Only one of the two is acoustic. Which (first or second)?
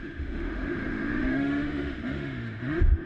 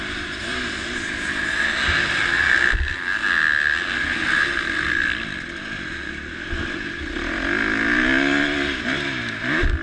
second